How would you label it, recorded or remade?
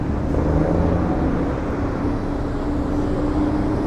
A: recorded